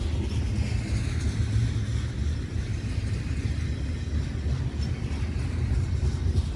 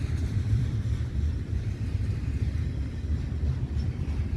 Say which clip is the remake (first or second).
second